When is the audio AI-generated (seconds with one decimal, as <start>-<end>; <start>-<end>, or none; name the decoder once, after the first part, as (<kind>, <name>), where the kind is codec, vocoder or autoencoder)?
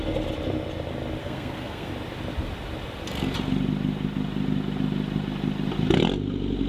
1.2-1.9 (codec, SNAC)